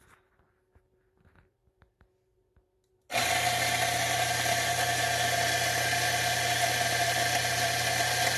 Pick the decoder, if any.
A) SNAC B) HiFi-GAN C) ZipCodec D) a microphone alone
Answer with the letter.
D